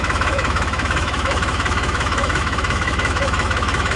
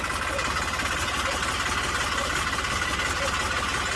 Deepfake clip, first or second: first